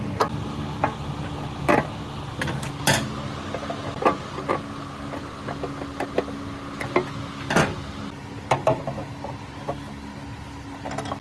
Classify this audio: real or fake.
real